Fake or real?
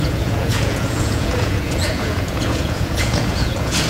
fake